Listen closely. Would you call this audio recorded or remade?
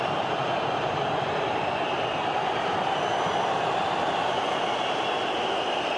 remade